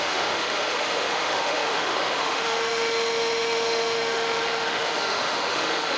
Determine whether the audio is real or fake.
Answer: fake